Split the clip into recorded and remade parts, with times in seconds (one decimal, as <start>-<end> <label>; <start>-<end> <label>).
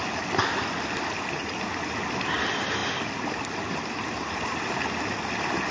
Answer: 0.0-5.7 recorded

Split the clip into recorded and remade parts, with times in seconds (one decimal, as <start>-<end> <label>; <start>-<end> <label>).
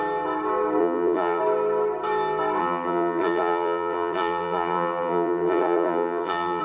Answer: 0.0-0.8 recorded; 0.8-1.4 remade; 1.4-2.6 recorded; 2.6-6.6 remade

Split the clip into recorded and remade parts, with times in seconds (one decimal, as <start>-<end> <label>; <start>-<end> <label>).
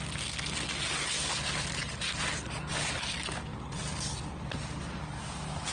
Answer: 0.0-3.5 recorded; 3.5-4.5 remade; 4.5-5.7 recorded